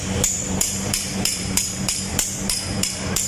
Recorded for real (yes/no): no